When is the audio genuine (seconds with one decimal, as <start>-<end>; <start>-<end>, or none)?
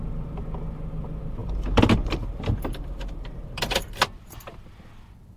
0.0-1.4; 4.0-5.4